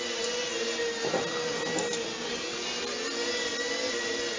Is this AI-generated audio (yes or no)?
no